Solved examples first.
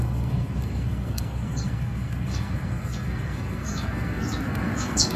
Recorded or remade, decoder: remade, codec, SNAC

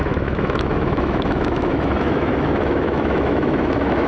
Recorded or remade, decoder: remade, autoencoder, DAC-VAE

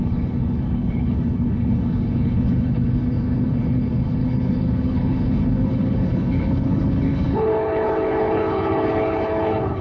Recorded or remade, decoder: remade, codec, HILCodec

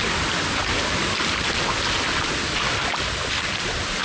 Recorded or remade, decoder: recorded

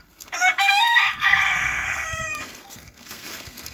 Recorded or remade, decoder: remade, codec, SNAC